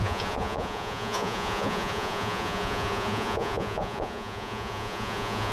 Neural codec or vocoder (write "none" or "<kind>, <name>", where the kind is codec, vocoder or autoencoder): vocoder, Vocos